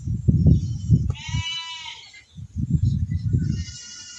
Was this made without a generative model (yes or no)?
yes